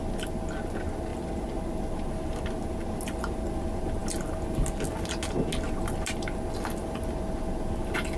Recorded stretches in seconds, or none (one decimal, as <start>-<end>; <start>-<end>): 0.0-8.2